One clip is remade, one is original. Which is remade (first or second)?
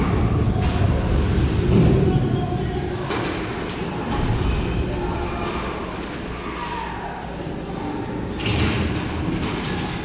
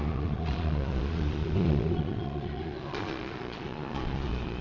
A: second